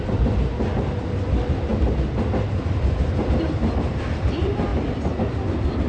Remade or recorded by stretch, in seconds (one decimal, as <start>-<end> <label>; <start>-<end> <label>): 0.0-4.7 remade; 4.7-5.3 recorded; 5.3-5.9 remade